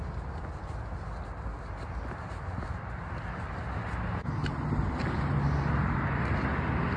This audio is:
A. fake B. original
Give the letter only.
B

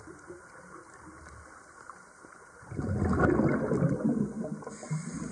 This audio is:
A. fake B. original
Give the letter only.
B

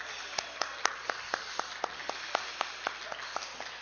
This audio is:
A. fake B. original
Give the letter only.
B